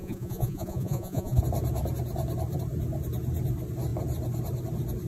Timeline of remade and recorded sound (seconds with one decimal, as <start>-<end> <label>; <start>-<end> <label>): 0.0-1.4 remade; 1.4-5.1 recorded